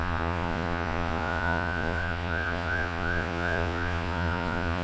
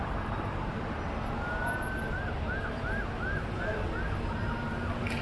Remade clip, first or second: first